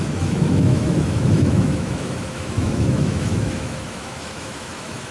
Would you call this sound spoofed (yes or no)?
yes